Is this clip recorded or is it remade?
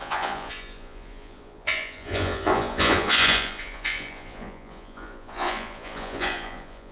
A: remade